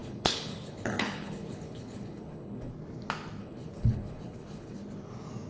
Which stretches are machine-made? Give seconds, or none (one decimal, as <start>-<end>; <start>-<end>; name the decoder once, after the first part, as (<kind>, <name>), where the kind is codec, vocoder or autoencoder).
0.0-2.7 (codec, HILCodec); 3.4-4.8